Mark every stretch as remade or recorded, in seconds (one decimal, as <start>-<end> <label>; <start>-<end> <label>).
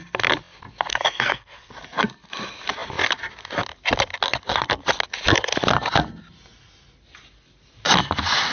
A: 0.0-0.9 recorded; 0.9-1.7 remade; 1.7-8.5 recorded